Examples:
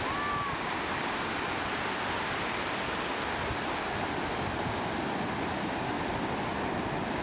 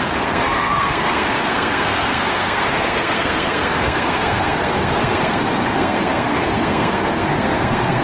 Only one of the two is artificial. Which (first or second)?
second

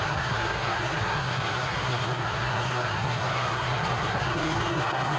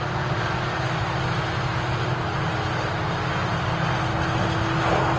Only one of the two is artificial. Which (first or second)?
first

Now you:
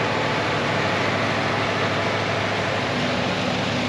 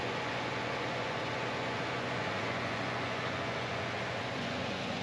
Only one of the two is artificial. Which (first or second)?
second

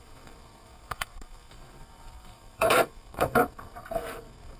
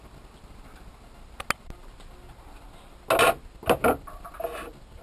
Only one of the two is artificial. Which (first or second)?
first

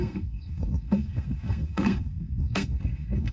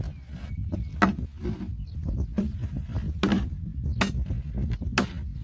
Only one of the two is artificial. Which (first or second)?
first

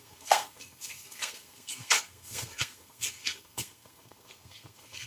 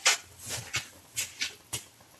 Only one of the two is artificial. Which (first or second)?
first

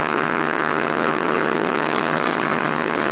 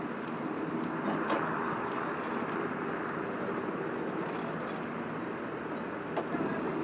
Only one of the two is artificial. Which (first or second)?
first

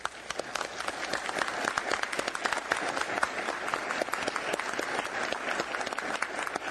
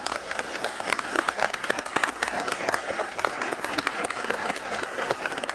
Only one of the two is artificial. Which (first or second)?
second